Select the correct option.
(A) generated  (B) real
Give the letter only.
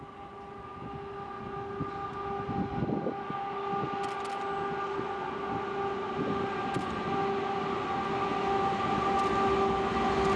B